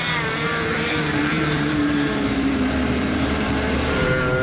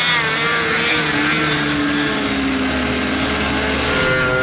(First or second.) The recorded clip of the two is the second